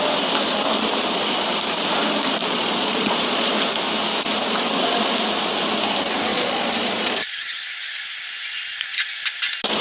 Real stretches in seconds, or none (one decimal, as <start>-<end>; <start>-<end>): 0.0-2.4; 3.5-6.3; 7.6-9.8